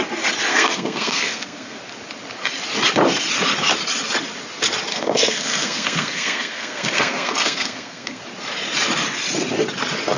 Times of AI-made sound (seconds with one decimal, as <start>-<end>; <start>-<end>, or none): 0.5-1.8; 4.9-8.2